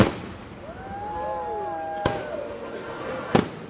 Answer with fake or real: real